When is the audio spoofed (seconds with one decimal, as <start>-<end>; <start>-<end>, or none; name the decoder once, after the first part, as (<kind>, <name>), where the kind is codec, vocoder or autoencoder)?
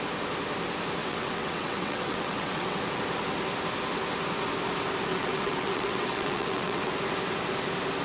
1.0-2.8 (vocoder, WaveNeXt); 5.1-6.9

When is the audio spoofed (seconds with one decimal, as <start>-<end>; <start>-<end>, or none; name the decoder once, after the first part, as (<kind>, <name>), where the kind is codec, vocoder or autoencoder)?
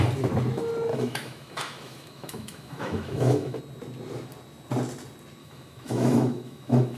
0.9-3.6 (autoencoder, DAC-VAE); 5.4-7.0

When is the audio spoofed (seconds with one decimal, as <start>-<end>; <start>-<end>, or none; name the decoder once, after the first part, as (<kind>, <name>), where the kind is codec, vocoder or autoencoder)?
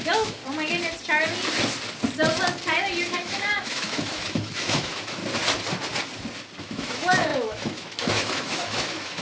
0.0-0.4 (autoencoder, DAC-VAE); 3.1-5.2; 6.6-9.2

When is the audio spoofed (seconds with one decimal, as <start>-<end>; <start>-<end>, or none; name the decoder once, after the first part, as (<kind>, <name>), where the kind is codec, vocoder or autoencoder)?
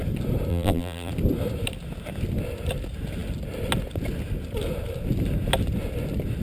0.5-1.1 (vocoder, BigVGAN v2)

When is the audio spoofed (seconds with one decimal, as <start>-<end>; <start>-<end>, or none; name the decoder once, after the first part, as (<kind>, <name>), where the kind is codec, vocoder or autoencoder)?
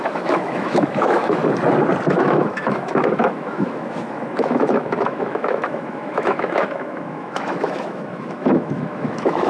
0.0-1.4 (autoencoder, DAC-VAE); 2.1-9.5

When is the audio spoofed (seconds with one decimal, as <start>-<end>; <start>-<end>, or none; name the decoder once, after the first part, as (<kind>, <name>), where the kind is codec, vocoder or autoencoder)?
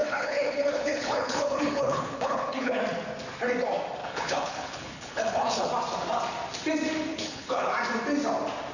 0.0-2.8 (codec, HILCodec); 4.0-5.7; 7.1-7.7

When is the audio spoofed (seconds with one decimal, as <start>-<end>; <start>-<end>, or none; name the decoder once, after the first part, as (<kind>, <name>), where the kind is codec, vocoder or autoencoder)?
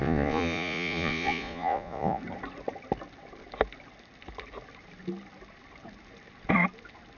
0.0-2.2 (vocoder, Vocos)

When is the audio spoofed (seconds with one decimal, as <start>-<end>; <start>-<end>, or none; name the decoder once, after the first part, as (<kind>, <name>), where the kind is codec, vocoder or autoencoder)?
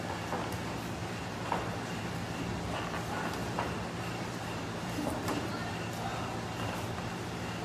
1.0-2.0 (vocoder, BigVGAN v2); 3.4-5.5